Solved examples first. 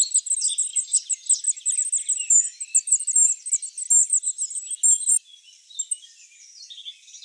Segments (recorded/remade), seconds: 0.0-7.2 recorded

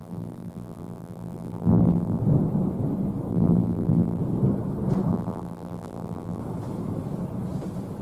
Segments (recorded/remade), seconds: 0.0-2.2 remade; 2.2-3.3 recorded; 3.3-4.2 remade; 4.2-5.1 recorded; 5.1-6.4 remade; 6.4-8.0 recorded

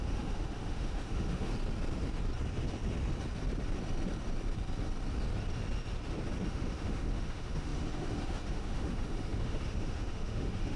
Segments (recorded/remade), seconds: 0.0-1.5 remade; 1.5-6.5 recorded; 6.5-10.8 remade

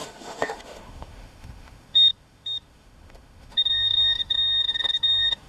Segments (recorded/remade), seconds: 0.0-5.5 remade

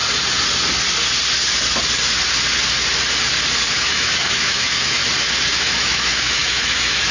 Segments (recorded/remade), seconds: 0.0-3.7 recorded; 3.7-5.0 remade; 5.0-5.6 recorded; 5.6-7.1 remade

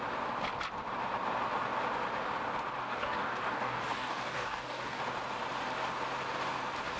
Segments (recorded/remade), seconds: 0.0-2.8 recorded; 2.8-5.0 remade; 5.0-7.0 recorded